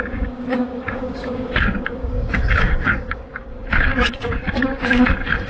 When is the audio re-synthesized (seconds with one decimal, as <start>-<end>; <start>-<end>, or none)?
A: 0.0-5.5